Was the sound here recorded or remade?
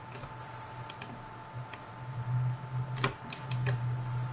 recorded